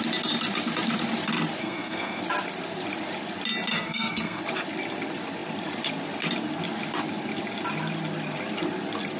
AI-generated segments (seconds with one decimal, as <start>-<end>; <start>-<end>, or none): 1.6-2.2; 3.7-4.4